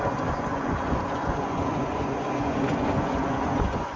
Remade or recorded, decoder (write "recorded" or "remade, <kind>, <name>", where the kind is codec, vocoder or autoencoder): remade, vocoder, Vocos